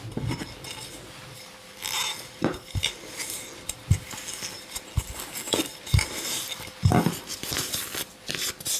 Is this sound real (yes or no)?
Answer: yes